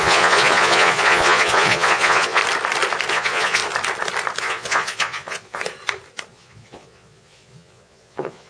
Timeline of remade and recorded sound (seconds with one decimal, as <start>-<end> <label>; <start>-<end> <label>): 0.0-2.4 remade; 2.4-3.1 recorded; 3.1-3.6 remade; 3.6-4.4 recorded; 4.4-5.6 remade; 5.6-6.3 recorded; 6.3-8.5 remade